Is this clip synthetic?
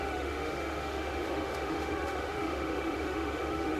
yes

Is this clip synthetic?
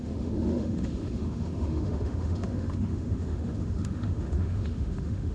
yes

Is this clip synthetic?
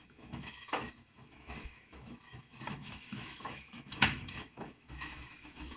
yes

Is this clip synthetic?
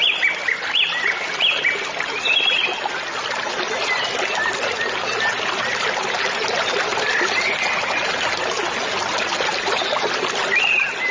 no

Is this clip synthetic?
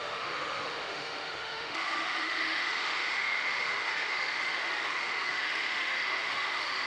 yes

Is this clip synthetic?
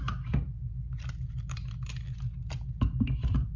no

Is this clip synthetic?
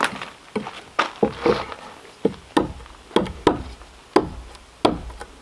no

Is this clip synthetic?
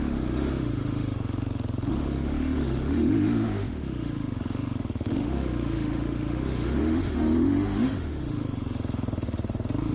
yes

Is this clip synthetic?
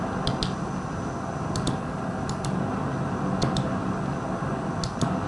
no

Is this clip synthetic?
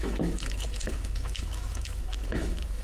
yes